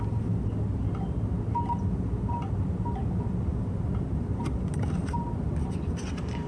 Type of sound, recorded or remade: recorded